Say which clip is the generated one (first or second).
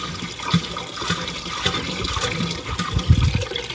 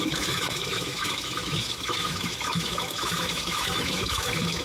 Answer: second